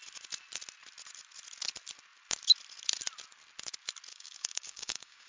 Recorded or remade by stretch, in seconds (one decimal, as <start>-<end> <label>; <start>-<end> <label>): 0.0-4.1 recorded; 4.1-5.3 remade